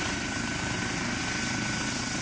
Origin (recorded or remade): recorded